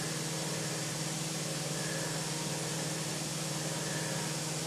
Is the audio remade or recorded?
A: recorded